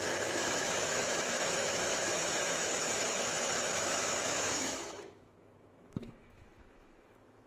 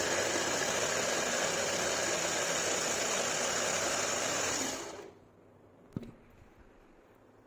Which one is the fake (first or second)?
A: first